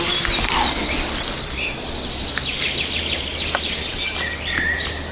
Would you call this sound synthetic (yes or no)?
no